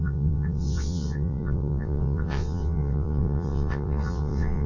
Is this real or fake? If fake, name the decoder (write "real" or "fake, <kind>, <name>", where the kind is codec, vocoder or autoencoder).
fake, vocoder, WaveNeXt